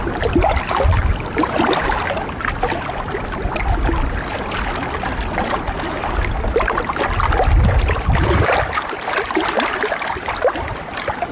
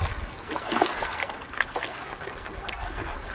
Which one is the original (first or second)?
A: first